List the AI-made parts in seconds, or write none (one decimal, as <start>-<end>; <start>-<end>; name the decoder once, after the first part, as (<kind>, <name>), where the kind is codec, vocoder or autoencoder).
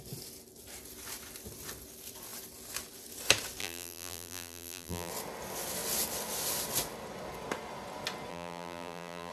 3.6-5.1 (vocoder, BigVGAN v2); 8.3-9.3